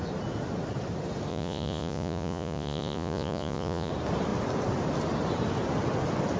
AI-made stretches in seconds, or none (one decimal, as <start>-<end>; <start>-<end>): 1.3-3.9